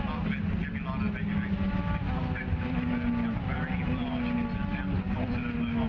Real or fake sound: real